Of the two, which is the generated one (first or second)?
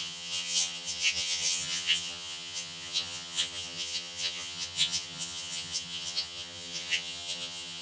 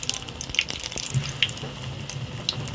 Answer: first